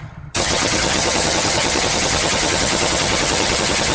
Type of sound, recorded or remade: remade